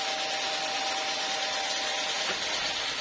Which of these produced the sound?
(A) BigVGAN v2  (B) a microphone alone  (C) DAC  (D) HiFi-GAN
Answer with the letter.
B